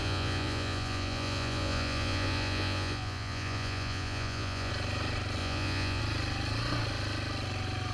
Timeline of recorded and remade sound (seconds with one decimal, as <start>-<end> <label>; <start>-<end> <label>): 0.0-4.7 remade; 4.7-5.4 recorded; 5.4-6.0 remade; 6.0-7.9 recorded